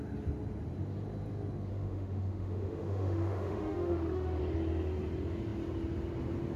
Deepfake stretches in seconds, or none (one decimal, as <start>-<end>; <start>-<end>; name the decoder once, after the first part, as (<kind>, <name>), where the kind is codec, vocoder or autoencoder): 1.7-4.4 (autoencoder, DAC-VAE)